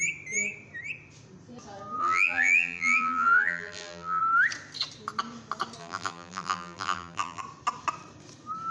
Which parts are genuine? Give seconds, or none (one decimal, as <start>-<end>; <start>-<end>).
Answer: 0.0-2.0; 4.2-5.8; 7.4-8.7